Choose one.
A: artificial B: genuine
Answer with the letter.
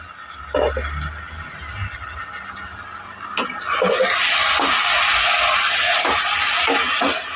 B